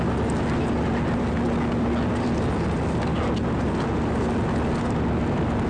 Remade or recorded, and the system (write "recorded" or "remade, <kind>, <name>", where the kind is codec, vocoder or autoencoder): recorded